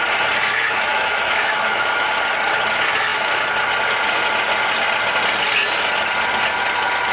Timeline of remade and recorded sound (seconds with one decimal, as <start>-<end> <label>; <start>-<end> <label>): 0.0-0.9 recorded; 0.9-2.1 remade; 2.1-7.1 recorded